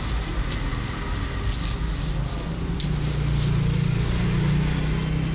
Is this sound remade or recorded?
recorded